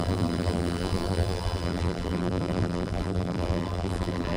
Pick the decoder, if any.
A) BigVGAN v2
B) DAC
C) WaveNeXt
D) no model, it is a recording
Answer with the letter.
A